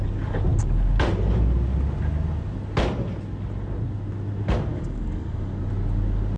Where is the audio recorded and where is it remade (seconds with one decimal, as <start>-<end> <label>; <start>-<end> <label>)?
0.0-4.7 recorded; 4.7-5.6 remade; 5.6-6.4 recorded